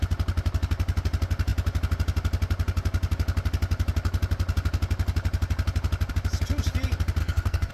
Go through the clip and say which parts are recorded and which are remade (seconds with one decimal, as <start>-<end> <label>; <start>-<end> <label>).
0.0-7.2 recorded; 7.2-7.7 remade